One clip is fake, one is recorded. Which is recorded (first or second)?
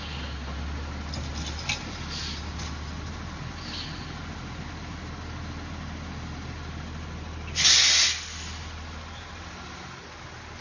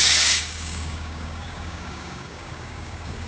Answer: first